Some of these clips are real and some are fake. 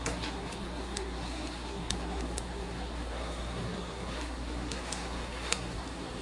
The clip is fake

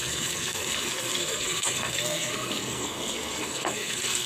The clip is fake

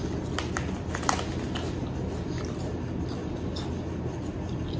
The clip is real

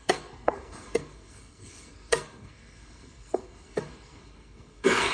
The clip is fake